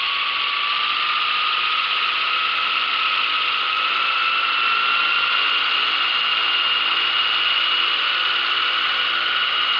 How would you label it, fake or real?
real